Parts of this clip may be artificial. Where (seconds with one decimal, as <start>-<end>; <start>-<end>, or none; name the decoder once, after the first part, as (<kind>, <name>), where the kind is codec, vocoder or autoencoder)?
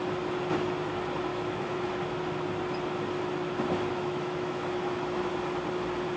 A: 1.3-1.9 (autoencoder, DAC-VAE); 3.9-5.3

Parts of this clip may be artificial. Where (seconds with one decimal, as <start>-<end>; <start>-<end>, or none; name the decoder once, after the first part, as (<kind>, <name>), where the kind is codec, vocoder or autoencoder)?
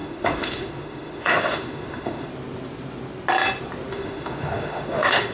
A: 0.0-2.3 (autoencoder, DAC-VAE); 3.9-5.3